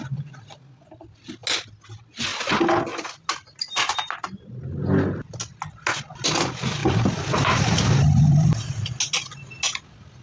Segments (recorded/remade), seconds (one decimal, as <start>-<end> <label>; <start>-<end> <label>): 0.0-6.8 recorded; 6.8-8.9 remade; 8.9-10.2 recorded